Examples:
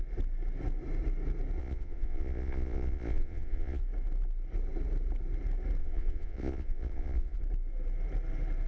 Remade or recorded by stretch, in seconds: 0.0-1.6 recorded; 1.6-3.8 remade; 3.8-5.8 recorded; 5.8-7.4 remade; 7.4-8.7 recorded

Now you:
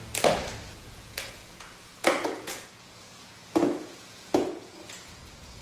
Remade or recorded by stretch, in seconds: 0.0-0.8 recorded; 0.8-5.6 remade

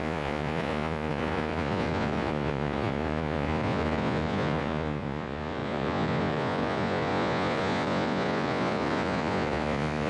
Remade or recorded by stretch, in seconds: 0.0-10.1 remade

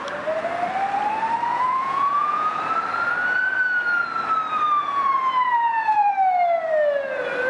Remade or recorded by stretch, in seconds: 0.0-1.5 recorded; 1.5-2.6 remade; 2.6-4.8 recorded; 4.8-6.1 remade; 6.1-7.5 recorded

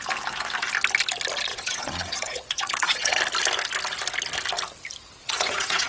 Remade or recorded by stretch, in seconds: 0.0-1.5 recorded; 1.5-3.2 remade; 3.2-5.2 recorded; 5.2-5.9 remade